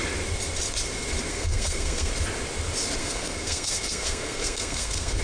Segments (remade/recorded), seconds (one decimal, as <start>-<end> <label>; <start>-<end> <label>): 0.0-1.3 recorded; 1.3-2.1 remade; 2.1-3.0 recorded; 3.0-5.2 remade